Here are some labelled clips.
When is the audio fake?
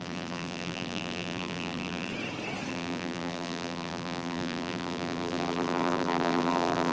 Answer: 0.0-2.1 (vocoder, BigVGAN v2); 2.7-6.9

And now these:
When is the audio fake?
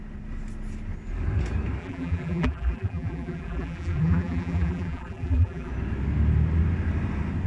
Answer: 1.8-5.7 (vocoder, BigVGAN v2)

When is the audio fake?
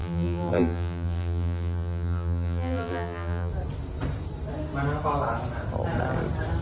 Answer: 0.0-3.5 (vocoder, BigVGAN v2)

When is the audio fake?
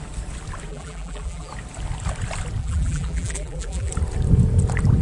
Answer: 0.7-1.5 (vocoder, BigVGAN v2); 2.6-3.9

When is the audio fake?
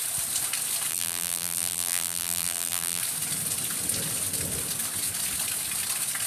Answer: 0.9-3.0 (vocoder, BigVGAN v2)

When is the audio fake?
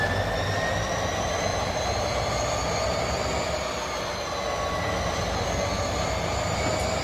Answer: 1.5-2.2 (vocoder, BigVGAN v2)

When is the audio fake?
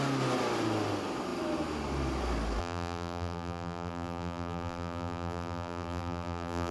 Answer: 2.6-6.7 (vocoder, BigVGAN v2)